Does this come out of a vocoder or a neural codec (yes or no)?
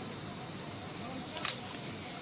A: no